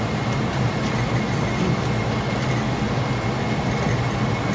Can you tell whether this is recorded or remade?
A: recorded